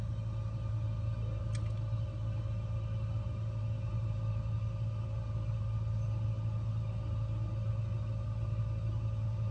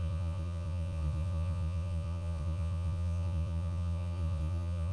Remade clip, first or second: second